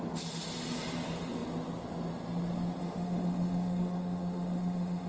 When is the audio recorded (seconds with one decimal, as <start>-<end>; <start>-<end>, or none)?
0.0-2.8